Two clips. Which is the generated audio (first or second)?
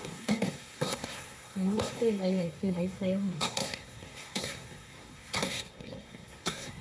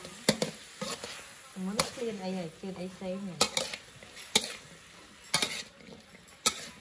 first